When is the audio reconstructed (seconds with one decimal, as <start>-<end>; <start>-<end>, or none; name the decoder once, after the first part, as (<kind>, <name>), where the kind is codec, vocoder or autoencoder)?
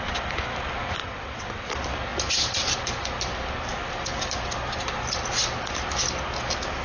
1.0-1.7 (vocoder, WaveNeXt)